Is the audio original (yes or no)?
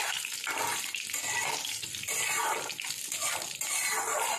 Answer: yes